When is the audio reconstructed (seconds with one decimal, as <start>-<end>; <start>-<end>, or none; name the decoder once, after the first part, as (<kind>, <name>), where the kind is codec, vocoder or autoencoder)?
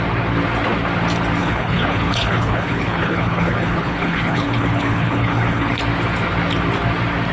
1.4-5.8 (codec, HILCodec)